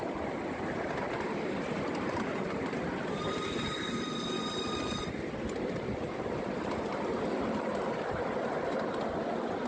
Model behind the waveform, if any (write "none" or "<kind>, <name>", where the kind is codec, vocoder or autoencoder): none